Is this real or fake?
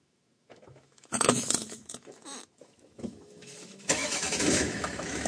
fake